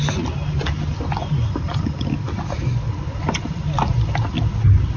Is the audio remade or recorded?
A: recorded